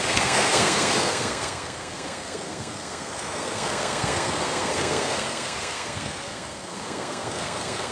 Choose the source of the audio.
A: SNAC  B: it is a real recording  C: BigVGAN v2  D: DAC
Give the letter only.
A